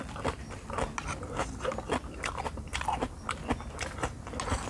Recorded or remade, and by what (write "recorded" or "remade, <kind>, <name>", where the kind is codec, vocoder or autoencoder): recorded